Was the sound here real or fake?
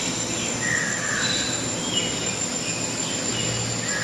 real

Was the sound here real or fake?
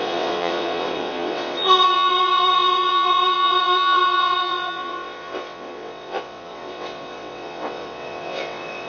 fake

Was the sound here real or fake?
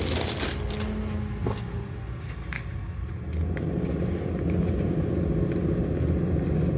real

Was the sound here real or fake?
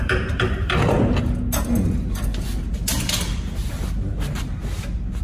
real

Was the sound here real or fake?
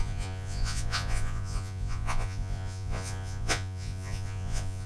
fake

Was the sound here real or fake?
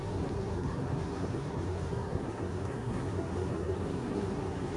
fake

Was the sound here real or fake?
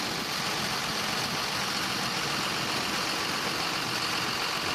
real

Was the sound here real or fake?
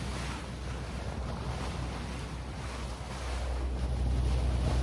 real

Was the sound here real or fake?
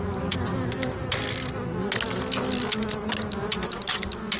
real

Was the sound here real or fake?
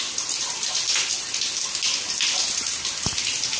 real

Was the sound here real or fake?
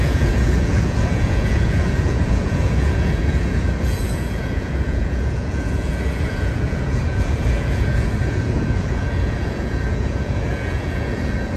fake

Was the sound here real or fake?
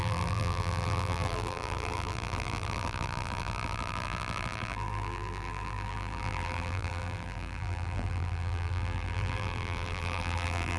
fake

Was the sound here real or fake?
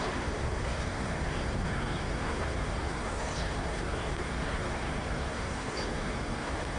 fake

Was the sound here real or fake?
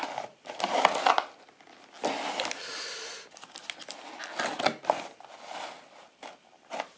real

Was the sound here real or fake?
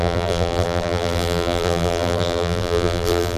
fake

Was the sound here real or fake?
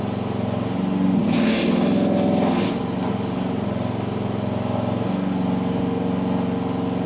real